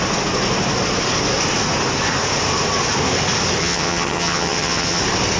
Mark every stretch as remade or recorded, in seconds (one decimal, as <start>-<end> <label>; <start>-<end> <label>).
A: 0.0-3.6 recorded; 3.6-5.0 remade; 5.0-5.4 recorded